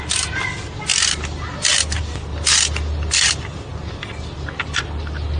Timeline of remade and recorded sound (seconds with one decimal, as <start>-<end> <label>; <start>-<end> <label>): 0.0-5.4 recorded